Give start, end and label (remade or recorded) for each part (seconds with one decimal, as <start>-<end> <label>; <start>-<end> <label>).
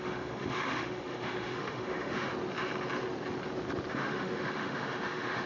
0.0-2.3 remade; 2.3-3.9 recorded; 3.9-5.5 remade